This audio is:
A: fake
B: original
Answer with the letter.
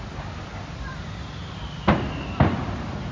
B